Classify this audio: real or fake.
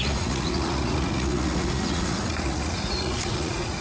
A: fake